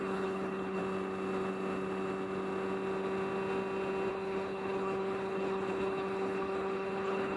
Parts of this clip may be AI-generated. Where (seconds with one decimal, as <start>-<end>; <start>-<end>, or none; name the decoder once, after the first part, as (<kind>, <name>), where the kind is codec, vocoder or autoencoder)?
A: 0.0-0.8 (codec, HILCodec); 4.1-7.4